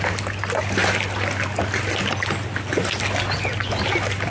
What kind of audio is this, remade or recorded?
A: recorded